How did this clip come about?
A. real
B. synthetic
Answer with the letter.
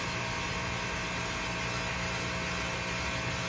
A